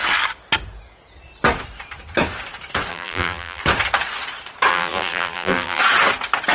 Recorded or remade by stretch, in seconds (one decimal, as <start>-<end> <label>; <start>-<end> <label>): 0.0-2.9 recorded; 2.9-3.6 remade; 3.6-4.7 recorded; 4.7-5.8 remade; 5.8-6.5 recorded